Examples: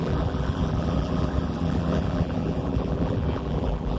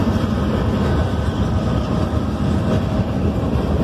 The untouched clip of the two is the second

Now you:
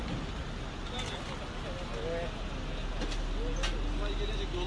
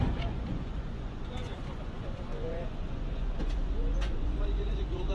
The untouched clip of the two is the first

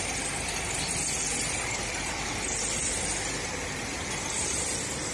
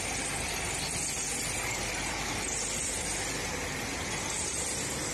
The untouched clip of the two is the second